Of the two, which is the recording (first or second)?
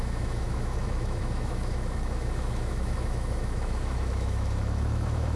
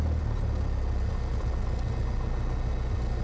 second